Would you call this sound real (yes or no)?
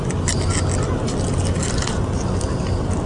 yes